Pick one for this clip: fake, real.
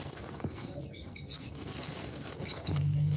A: fake